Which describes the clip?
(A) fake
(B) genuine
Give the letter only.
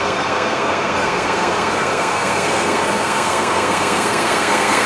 A